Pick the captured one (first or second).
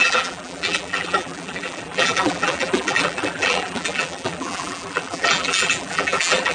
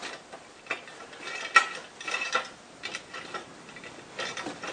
second